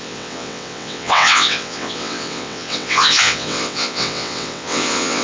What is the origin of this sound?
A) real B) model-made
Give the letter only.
B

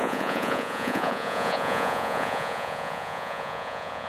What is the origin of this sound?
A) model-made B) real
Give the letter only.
A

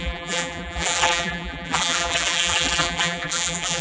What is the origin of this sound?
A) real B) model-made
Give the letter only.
B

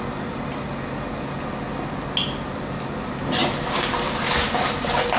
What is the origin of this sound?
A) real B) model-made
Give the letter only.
A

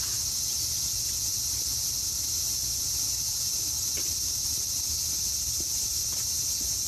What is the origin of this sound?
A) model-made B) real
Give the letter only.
B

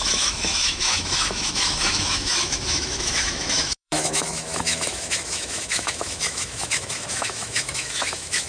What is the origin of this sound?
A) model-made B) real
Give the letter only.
A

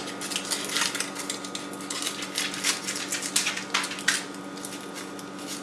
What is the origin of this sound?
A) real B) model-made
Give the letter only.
A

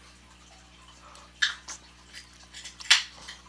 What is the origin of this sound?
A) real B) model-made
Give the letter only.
A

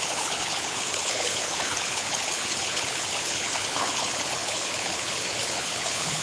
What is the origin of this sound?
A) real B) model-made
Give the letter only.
B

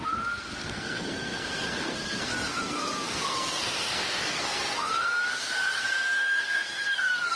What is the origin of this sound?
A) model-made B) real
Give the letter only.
A